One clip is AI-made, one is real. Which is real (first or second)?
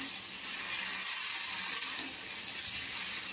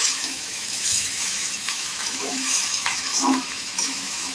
first